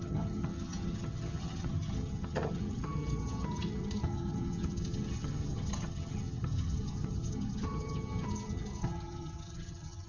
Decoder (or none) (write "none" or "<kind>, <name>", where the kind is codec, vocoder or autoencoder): vocoder, HiFi-GAN